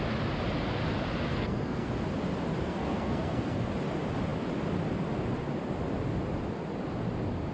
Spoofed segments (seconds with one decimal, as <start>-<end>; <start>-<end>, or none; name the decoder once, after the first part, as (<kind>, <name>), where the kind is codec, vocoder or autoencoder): 1.3-1.9 (codec, SNAC); 2.6-3.6